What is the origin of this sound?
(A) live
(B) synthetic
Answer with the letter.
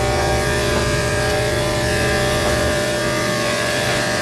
B